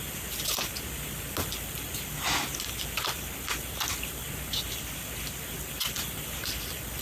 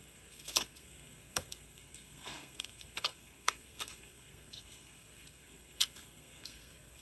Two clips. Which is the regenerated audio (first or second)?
second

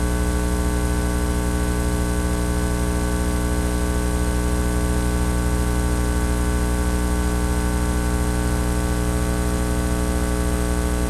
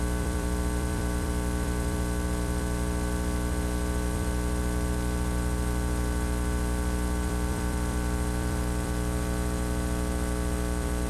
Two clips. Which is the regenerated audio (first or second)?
second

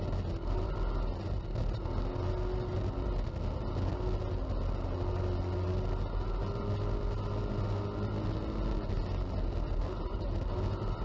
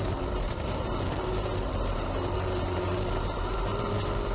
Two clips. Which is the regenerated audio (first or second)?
second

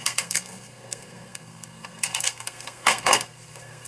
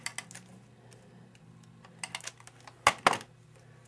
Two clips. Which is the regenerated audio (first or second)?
first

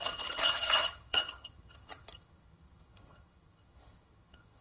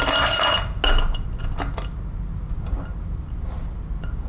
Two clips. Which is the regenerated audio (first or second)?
first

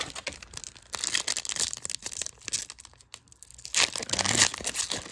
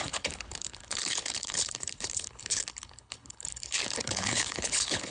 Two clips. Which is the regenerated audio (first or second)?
second